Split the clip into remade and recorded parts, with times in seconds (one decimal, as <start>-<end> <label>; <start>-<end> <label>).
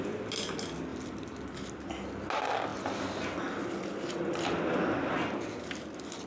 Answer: 0.0-6.3 recorded